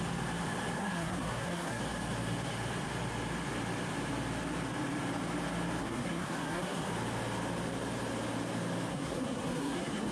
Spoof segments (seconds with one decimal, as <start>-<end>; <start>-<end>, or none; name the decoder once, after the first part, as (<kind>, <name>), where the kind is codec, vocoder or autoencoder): 0.8-1.8 (codec, SNAC); 5.8-6.9; 8.9-10.1